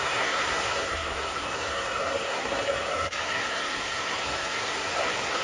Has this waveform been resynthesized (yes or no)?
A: yes